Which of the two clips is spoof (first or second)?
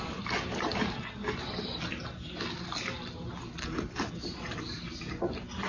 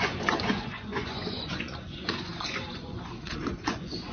second